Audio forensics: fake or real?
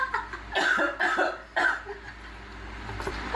real